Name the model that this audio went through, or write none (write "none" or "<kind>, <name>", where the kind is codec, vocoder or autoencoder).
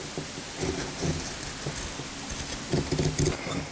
none